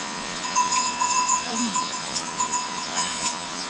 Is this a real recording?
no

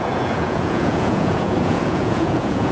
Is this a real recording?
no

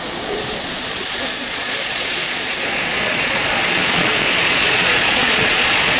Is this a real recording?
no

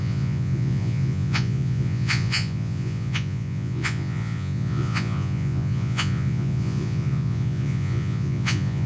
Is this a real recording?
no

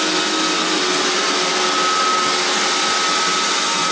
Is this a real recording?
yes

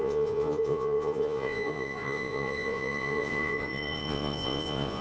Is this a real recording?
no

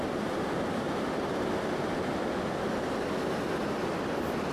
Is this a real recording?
yes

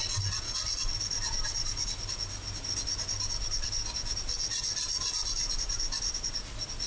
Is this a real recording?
yes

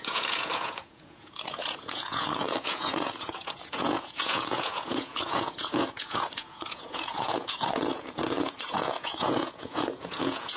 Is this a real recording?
no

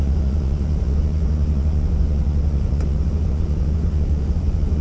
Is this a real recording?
no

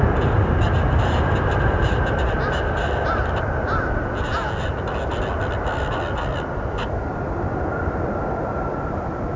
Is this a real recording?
yes